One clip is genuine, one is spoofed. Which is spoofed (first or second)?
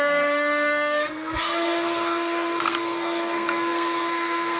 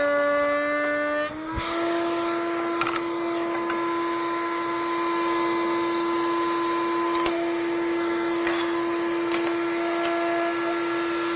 first